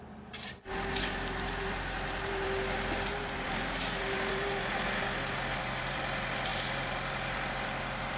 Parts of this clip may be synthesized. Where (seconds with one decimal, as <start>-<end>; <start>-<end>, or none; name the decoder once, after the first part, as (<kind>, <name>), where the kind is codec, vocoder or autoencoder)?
0.0-8.2 (vocoder, BigVGAN v2)